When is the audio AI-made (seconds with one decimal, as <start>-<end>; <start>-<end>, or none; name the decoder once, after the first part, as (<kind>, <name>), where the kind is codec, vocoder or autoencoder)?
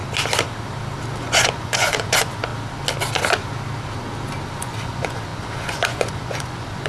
1.2-2.5 (vocoder, Vocos); 4.6-6.9